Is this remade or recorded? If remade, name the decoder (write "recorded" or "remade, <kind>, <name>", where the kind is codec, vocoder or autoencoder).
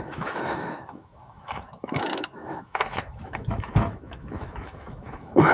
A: remade, autoencoder, DAC-VAE